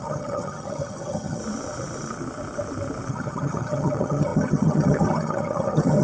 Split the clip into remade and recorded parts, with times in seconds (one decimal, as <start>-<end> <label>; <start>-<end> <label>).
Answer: 0.0-1.4 remade; 1.4-3.1 recorded; 3.1-6.0 remade